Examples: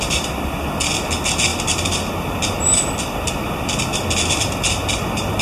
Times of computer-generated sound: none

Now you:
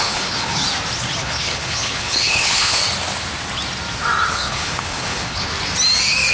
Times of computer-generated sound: 0.0-0.6 (codec, HILCodec); 1.2-2.8; 4.3-5.5

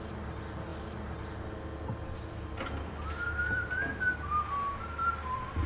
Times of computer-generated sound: none

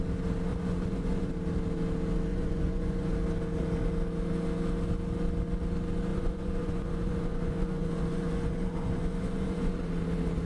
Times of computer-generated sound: 0.5-1.3 (vocoder, Vocos); 2.3-3.1; 6.1-9.8

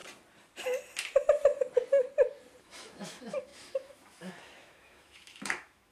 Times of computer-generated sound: 2.6-5.9 (autoencoder, DAC-VAE)

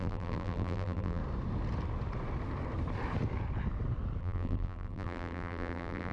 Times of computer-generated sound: 0.0-1.2 (vocoder, BigVGAN v2); 4.2-6.1

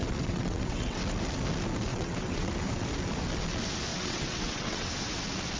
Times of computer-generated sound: 0.0-1.0 (vocoder, WaveNeXt); 1.9-2.5; 3.9-4.9

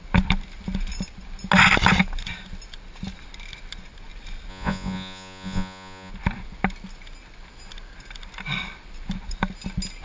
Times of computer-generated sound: 4.5-6.1 (vocoder, Vocos)